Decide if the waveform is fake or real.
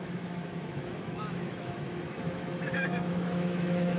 fake